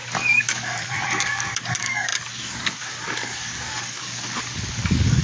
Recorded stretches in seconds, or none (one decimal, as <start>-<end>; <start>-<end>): none

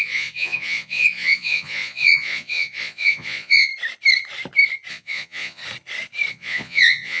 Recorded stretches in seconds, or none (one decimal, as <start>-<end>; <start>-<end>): 3.7-4.9; 5.6-6.3

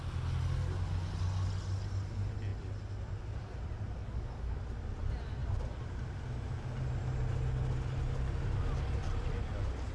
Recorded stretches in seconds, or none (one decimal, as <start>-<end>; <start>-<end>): 0.0-4.0; 4.6-9.9

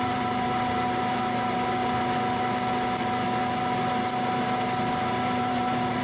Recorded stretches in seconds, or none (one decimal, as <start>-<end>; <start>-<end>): 1.8-5.4

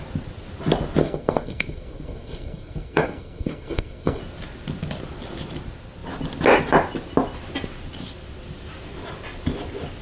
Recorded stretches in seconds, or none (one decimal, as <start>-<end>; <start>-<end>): 0.0-1.0; 4.2-10.0

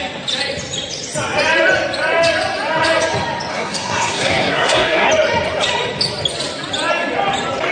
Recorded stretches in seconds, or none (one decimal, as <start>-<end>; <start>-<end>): 0.0-3.5; 5.1-7.7

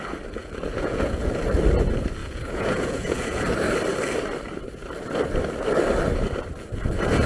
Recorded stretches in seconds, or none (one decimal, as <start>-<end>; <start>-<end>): 0.0-0.4; 1.4-2.2; 3.4-7.3